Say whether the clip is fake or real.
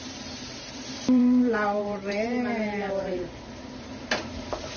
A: fake